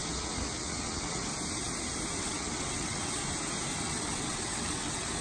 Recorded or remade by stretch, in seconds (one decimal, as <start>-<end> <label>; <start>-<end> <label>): 0.0-1.3 remade; 1.3-2.2 recorded; 2.2-3.2 remade; 3.2-3.8 recorded; 3.8-5.2 remade